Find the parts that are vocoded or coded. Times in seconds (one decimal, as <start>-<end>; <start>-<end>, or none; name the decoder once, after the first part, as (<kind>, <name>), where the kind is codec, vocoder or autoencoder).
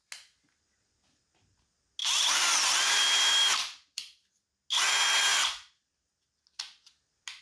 2.0-4.3 (vocoder, BigVGAN v2); 5.3-5.9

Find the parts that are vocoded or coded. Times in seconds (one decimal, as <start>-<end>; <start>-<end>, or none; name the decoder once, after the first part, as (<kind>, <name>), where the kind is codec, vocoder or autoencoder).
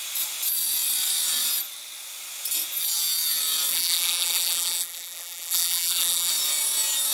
3.7-6.3 (vocoder, BigVGAN v2)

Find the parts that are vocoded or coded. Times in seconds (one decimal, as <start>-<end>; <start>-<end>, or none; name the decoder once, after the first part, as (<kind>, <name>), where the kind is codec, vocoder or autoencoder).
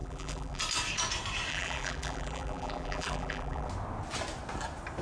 0.0-0.6 (vocoder, BigVGAN v2); 1.5-3.7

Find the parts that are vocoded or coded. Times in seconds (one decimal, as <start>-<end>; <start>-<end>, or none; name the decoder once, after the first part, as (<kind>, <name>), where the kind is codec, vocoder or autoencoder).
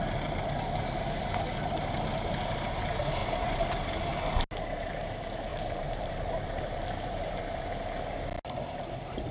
3.2-4.1 (vocoder, BigVGAN v2); 5.5-7.6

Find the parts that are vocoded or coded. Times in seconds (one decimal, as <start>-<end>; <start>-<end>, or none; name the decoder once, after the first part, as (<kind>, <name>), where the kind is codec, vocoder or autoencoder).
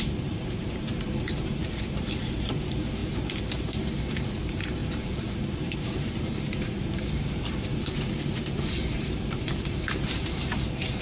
0.0-7.7 (vocoder, BigVGAN v2); 8.4-11.0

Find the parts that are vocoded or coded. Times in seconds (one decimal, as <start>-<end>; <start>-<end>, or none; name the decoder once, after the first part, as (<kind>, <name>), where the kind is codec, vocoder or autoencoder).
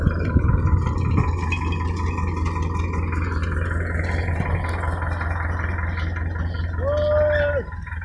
none